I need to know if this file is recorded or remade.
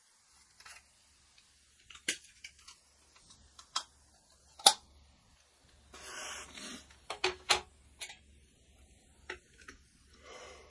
recorded